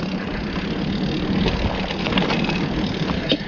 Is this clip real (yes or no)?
yes